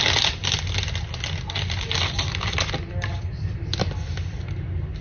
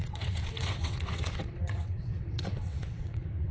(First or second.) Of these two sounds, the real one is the first